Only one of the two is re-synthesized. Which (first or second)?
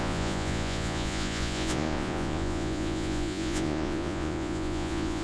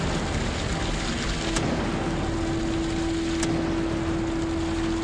first